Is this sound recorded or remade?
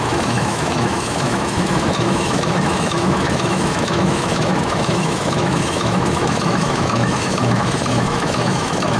remade